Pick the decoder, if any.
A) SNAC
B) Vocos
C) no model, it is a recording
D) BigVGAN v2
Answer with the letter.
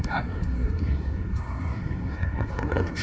A